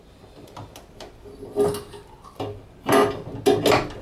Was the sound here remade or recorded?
recorded